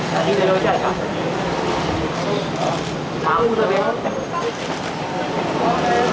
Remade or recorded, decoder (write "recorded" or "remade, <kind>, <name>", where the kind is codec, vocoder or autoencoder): recorded